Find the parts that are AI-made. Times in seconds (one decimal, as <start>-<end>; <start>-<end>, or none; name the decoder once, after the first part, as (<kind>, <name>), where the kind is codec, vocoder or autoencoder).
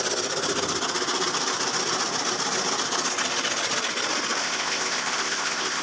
4.4-5.8 (codec, ZipCodec)